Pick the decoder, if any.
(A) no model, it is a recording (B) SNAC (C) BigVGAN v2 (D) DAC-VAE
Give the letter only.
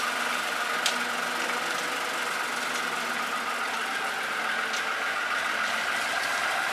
A